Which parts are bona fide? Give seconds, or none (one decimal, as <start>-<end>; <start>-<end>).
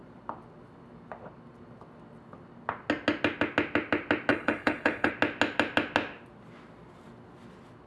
0.0-4.3; 5.1-7.9